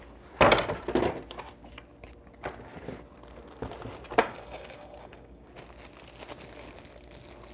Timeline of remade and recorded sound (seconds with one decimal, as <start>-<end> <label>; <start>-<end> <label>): 0.0-4.2 recorded; 4.2-5.5 remade; 5.5-7.5 recorded